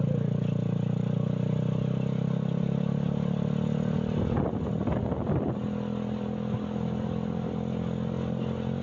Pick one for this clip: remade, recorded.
recorded